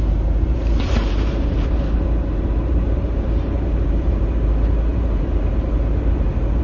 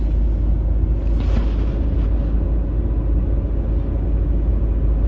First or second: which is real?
second